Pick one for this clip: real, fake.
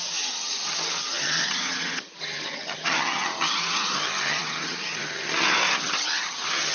fake